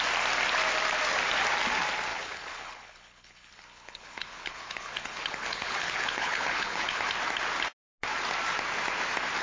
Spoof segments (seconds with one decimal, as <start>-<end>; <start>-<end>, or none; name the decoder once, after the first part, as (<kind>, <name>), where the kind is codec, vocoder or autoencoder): 2.1-7.0 (codec, HILCodec)